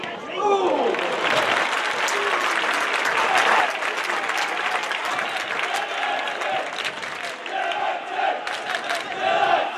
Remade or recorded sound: recorded